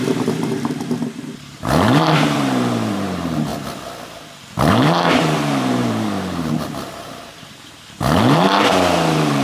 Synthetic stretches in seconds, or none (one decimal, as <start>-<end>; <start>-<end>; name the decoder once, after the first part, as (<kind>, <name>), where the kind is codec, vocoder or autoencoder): 0.0-3.5 (vocoder, BigVGAN v2); 4.7-9.4